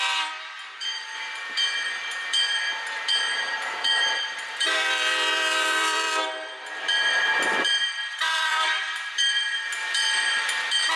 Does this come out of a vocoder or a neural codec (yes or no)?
yes